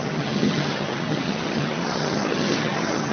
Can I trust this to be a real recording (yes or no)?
no